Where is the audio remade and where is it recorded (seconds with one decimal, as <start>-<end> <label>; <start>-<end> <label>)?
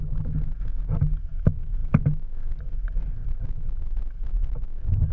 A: 0.0-5.1 recorded